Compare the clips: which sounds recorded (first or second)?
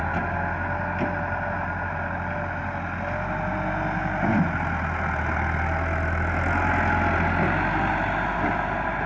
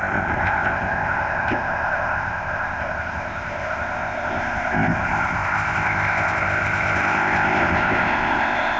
first